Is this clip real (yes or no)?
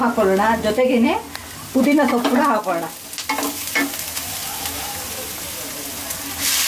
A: yes